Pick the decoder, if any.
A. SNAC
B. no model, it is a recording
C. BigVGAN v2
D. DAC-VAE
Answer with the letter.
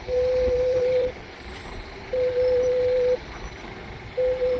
C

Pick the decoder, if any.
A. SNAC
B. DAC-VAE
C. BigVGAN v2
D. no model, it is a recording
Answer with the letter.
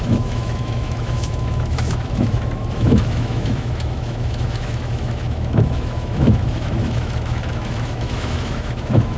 B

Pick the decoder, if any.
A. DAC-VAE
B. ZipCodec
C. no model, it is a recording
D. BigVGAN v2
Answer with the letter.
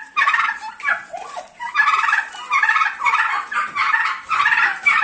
C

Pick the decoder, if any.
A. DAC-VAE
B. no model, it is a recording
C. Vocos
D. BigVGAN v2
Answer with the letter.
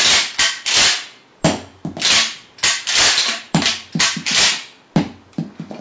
B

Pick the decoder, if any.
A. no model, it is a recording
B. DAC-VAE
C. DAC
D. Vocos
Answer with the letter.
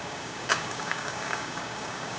C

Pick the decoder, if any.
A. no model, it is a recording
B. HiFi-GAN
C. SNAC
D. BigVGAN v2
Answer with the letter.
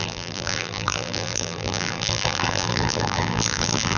D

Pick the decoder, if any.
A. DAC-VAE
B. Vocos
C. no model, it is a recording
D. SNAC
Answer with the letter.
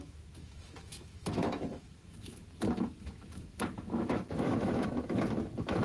A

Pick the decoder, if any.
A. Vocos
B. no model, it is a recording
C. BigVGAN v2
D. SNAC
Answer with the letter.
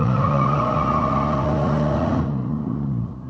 A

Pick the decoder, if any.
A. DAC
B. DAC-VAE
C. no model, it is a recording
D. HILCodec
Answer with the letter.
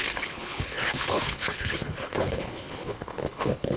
D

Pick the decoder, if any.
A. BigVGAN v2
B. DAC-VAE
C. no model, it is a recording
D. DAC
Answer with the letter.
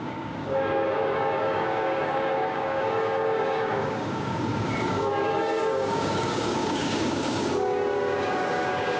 D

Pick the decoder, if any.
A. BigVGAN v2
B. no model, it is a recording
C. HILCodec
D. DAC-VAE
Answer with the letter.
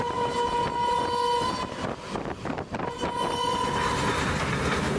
B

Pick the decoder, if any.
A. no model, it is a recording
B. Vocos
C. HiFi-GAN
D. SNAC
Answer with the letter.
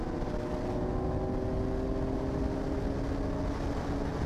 A